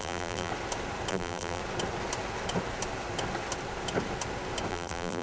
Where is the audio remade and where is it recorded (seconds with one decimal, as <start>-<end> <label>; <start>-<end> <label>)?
0.0-0.5 remade; 0.5-1.1 recorded; 1.1-1.6 remade; 1.6-4.7 recorded; 4.7-5.2 remade